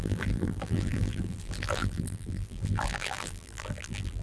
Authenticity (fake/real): fake